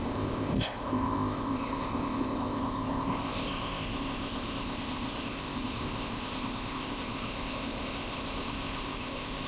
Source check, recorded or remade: remade